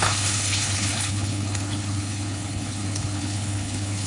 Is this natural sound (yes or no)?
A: no